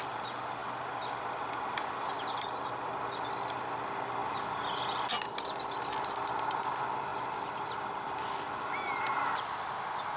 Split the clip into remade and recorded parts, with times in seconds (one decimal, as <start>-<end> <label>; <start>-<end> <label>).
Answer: 0.0-7.1 recorded; 7.1-9.0 remade; 9.0-10.2 recorded